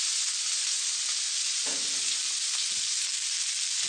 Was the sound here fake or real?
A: real